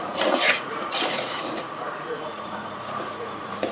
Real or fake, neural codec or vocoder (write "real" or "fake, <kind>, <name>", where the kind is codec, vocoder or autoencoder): fake, vocoder, Vocos